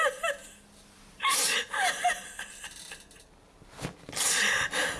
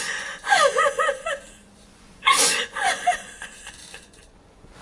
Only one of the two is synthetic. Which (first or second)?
second